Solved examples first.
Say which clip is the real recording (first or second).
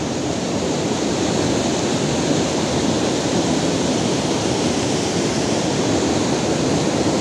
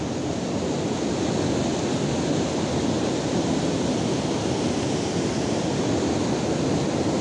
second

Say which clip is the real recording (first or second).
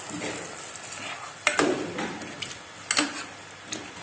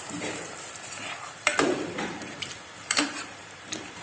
first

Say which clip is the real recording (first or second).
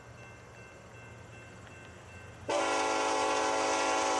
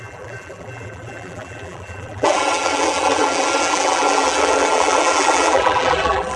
first